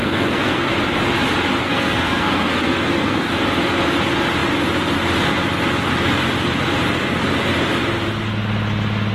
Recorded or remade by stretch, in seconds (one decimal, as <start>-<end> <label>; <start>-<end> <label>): 0.0-0.7 remade; 0.7-1.6 recorded; 1.6-3.3 remade; 3.3-9.1 recorded